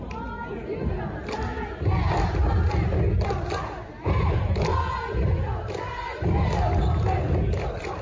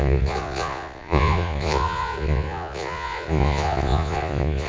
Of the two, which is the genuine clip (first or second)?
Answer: first